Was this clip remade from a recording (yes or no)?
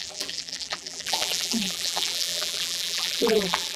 yes